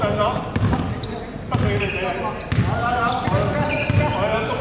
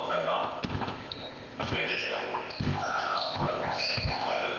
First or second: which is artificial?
second